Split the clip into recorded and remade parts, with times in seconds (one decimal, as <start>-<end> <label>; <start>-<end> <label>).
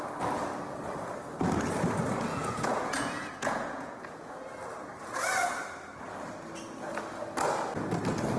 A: 0.0-2.3 recorded; 2.3-4.3 remade; 4.3-8.4 recorded